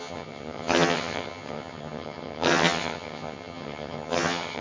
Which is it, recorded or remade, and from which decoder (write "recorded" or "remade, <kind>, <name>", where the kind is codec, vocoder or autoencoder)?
remade, vocoder, HiFi-GAN